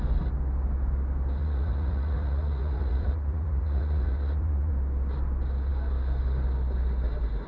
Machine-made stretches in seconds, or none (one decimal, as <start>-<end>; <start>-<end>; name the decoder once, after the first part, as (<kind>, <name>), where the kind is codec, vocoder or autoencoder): 1.4-4.7 (vocoder, Vocos)